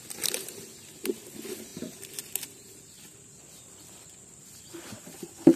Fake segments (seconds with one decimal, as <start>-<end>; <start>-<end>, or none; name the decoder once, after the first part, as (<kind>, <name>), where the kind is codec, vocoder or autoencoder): none